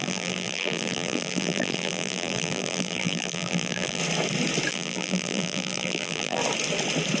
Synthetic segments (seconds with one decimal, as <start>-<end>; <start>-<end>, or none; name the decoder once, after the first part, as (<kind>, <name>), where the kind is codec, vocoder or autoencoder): 0.0-4.0 (vocoder, BigVGAN v2); 4.7-6.4